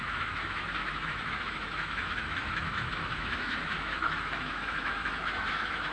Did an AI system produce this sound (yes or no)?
yes